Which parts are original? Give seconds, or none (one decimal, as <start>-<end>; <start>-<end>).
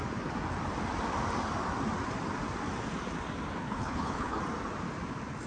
0.0-3.6; 4.4-5.5